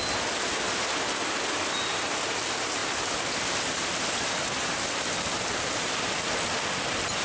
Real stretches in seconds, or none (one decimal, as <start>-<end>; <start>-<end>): 0.0-7.2